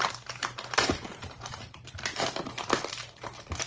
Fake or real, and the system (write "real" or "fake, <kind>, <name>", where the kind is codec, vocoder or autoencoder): fake, vocoder, BigVGAN v2